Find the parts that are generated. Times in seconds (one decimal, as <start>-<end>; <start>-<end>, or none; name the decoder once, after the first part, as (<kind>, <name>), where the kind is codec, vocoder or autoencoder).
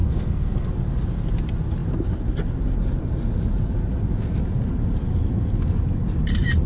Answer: 0.0-0.7 (codec, SNAC)